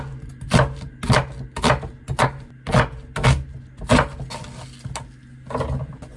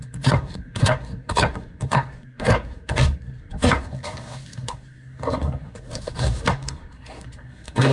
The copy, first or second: second